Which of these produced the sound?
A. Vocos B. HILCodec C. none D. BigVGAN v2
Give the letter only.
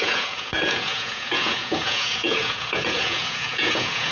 A